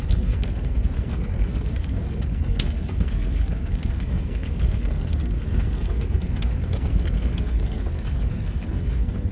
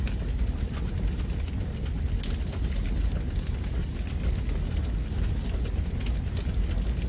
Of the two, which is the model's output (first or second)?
first